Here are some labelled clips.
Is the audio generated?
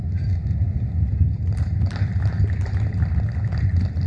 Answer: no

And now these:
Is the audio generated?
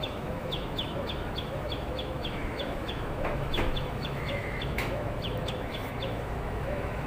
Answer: yes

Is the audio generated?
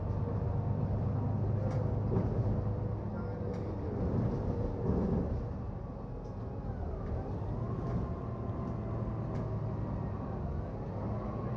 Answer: no